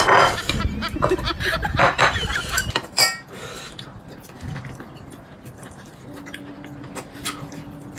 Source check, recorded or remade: remade